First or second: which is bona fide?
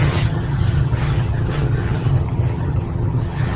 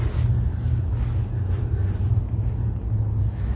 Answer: second